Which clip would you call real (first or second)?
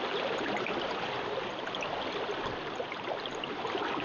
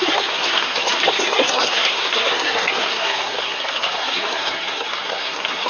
first